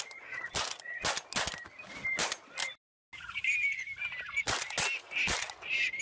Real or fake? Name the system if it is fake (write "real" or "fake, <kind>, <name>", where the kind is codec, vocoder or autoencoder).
real